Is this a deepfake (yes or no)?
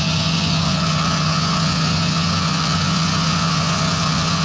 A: yes